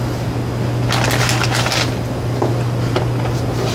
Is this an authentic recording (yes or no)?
yes